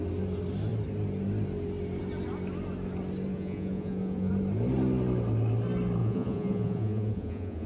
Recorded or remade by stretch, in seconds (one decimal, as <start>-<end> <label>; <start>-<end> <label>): 0.0-3.3 recorded; 3.3-4.3 remade; 4.3-6.0 recorded; 6.0-7.7 remade